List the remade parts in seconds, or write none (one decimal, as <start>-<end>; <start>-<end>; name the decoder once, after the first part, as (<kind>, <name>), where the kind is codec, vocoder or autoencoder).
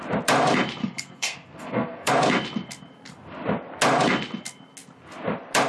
0.8-2.1 (codec, SNAC)